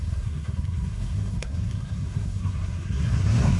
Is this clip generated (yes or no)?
yes